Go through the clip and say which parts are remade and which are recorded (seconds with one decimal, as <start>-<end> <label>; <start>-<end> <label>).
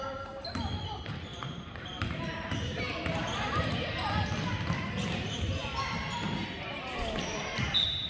0.0-1.3 recorded; 1.3-4.1 remade; 4.1-6.0 recorded; 6.0-7.6 remade; 7.6-8.1 recorded